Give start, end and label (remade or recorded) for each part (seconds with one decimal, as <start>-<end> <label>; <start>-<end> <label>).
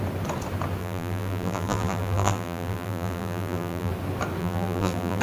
0.0-0.8 recorded; 0.8-3.9 remade; 3.9-4.4 recorded; 4.4-5.2 remade